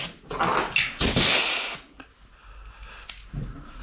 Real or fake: real